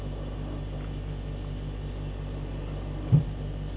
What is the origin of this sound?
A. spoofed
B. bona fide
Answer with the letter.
B